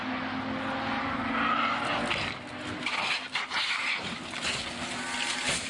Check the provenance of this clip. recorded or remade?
recorded